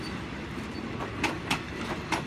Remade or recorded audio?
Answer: recorded